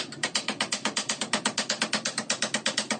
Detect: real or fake real